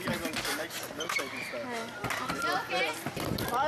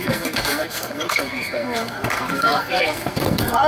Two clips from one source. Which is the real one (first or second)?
first